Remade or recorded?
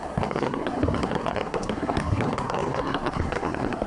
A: remade